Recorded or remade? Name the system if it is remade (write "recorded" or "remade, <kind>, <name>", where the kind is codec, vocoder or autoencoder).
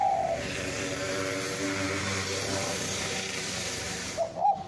remade, vocoder, BigVGAN v2